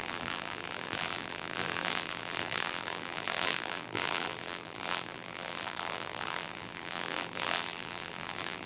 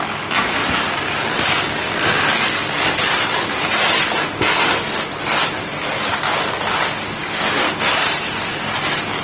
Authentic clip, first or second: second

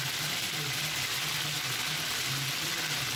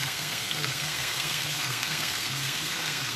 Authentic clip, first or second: first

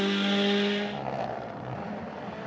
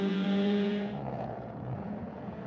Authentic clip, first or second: first